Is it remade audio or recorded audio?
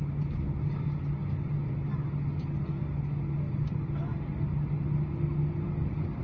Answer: recorded